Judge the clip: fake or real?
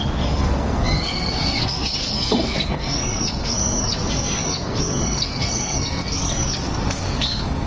fake